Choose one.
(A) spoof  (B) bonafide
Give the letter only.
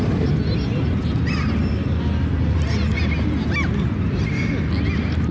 B